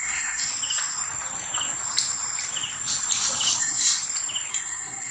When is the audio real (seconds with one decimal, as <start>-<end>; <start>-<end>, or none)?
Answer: 0.5-3.6; 4.0-4.5